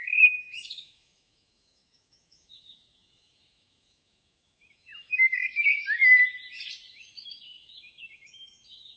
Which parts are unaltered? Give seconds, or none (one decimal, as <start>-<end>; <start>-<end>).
6.0-6.9